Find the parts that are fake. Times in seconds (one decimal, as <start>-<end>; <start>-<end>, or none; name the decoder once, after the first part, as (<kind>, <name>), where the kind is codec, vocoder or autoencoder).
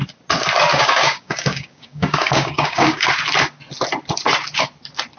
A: 0.7-3.1 (codec, DAC)